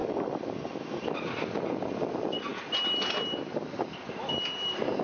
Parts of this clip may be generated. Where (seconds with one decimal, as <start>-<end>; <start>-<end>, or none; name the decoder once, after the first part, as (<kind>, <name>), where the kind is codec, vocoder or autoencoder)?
0.0-1.2 (vocoder, BigVGAN v2)